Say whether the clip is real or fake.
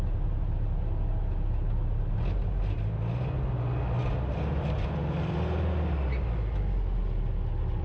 real